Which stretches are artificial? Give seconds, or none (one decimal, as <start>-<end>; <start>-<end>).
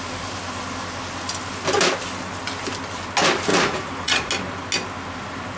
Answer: 3.5-4.3